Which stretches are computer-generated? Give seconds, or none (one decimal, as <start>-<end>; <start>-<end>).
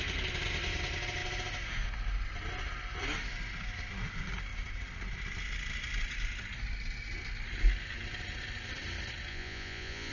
9.3-10.1